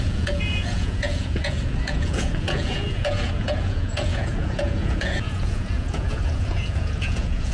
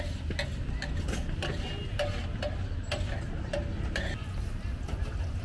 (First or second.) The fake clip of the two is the first